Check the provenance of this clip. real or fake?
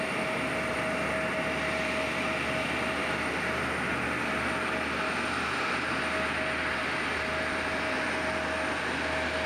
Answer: real